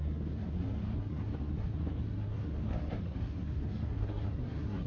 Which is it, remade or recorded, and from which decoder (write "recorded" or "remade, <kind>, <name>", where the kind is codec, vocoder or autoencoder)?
remade, codec, SNAC